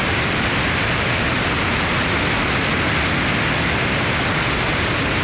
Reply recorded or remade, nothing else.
recorded